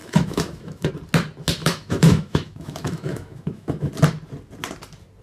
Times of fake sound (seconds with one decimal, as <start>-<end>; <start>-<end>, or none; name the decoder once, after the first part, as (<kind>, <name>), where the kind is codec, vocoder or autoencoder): 0.0-0.9 (autoencoder, DAC-VAE); 1.6-3.9